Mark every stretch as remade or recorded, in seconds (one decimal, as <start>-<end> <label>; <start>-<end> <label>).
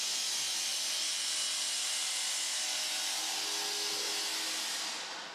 0.0-5.3 recorded